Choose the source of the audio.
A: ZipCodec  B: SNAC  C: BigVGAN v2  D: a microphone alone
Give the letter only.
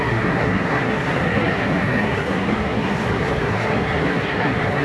B